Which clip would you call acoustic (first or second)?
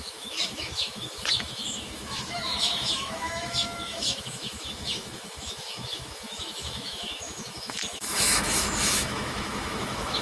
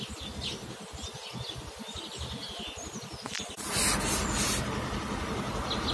second